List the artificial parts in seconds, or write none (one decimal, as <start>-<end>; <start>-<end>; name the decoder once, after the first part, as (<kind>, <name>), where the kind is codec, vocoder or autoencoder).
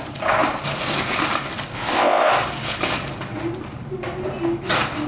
1.7-2.3 (codec, ZipCodec)